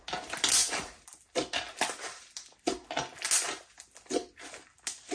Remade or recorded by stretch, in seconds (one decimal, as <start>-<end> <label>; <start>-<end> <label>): 0.0-5.1 recorded